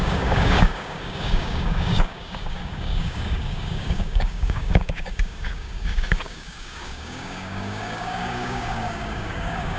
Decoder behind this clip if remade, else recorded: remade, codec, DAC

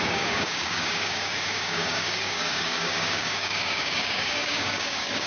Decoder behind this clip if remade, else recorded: remade, codec, DAC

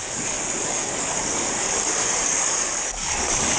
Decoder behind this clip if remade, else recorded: remade, codec, DAC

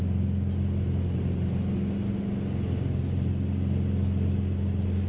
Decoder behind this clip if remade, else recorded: recorded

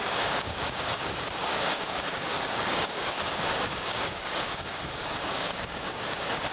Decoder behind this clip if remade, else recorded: remade, codec, DAC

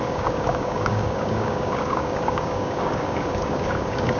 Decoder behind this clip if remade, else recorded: remade, codec, DAC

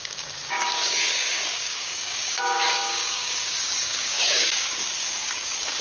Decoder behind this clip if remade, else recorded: remade, codec, DAC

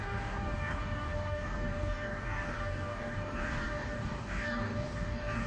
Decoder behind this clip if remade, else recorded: remade, codec, DAC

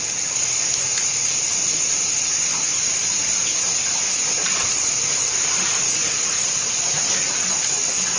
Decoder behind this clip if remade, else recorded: recorded